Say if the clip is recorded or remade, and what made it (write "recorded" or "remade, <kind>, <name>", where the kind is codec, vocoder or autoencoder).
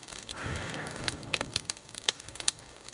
remade, codec, DAC